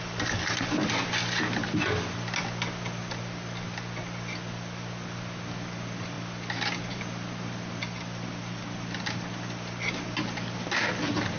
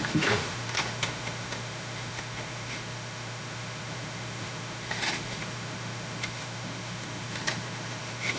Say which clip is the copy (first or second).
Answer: second